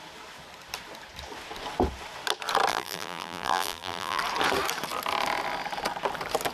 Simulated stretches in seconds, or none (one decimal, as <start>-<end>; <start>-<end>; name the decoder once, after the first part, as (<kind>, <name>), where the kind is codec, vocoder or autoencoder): 2.7-4.2 (vocoder, BigVGAN v2)